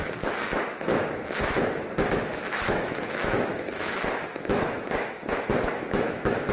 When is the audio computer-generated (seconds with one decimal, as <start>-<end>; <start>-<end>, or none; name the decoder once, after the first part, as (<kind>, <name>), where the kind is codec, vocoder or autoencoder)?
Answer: 0.0-0.9 (autoencoder, DAC-VAE); 2.1-6.5

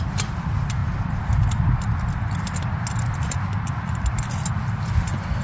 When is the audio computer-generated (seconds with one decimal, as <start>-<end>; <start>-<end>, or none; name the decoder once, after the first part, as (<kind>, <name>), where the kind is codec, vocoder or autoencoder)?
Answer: none